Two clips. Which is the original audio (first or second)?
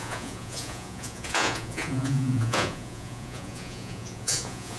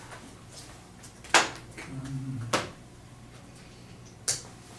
second